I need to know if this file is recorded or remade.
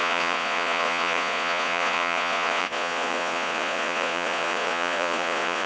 remade